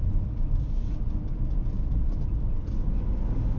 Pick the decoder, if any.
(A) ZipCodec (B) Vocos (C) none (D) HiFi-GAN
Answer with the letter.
C